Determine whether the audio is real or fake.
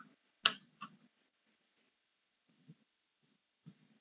real